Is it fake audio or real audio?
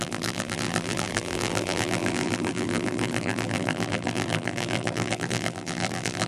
fake